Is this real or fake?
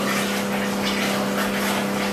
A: real